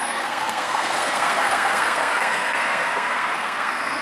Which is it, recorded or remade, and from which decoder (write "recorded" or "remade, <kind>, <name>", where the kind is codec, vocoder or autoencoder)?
remade, codec, SNAC